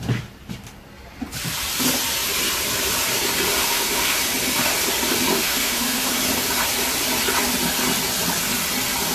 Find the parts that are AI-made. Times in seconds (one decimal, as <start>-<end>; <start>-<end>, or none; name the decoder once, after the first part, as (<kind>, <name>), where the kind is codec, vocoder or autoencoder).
3.6-4.2 (autoencoder, DAC-VAE); 5.3-6.1